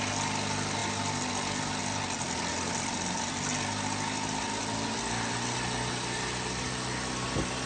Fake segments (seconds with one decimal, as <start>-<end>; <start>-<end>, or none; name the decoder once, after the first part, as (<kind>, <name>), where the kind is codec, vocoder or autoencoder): none